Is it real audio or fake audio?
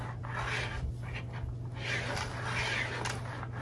real